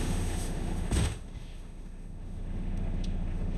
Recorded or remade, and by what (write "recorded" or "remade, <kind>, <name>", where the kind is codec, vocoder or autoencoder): remade, autoencoder, DAC-VAE